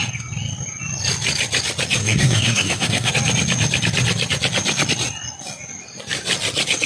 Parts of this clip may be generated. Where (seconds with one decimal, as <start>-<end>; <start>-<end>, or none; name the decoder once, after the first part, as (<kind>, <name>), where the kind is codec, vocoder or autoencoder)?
2.0-3.1 (codec, SNAC)